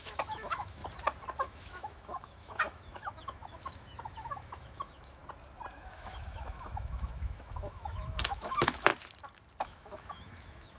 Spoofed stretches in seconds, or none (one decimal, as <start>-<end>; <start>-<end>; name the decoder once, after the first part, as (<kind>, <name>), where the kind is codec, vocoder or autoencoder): 0.0-0.8 (autoencoder, DAC-VAE); 1.4-5.2; 5.7-8.9; 9.6-10.8